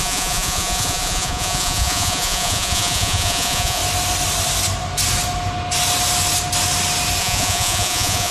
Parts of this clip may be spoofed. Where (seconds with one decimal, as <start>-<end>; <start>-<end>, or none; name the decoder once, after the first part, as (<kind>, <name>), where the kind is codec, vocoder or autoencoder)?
0.0-3.8 (vocoder, Vocos); 7.2-8.3